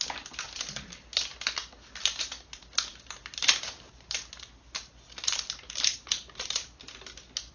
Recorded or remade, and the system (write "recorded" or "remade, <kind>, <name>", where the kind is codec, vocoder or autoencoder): recorded